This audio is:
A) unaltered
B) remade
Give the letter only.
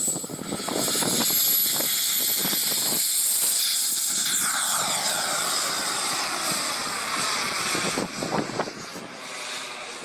A